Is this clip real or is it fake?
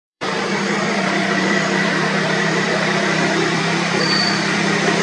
fake